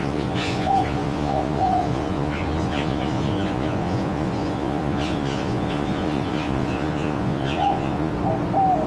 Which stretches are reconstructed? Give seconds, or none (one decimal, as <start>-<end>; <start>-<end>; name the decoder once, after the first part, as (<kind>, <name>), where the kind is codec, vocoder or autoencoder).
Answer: 0.0-8.1 (vocoder, Vocos)